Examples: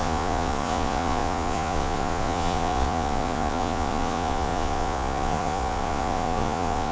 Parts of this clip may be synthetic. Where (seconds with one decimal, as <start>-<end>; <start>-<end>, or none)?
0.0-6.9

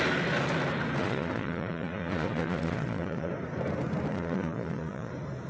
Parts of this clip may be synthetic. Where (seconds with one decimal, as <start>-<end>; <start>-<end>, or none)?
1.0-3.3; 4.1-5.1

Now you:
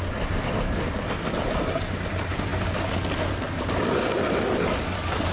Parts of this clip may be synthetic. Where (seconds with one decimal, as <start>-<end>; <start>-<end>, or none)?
none

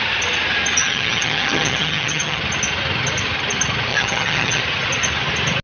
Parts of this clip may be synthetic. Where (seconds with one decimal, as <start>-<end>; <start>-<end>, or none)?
0.8-2.4; 3.9-4.6